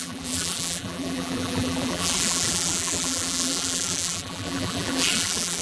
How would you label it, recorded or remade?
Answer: remade